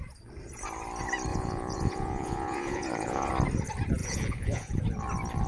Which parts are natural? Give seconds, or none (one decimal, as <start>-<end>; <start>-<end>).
0.0-1.3; 3.3-4.0; 4.8-5.5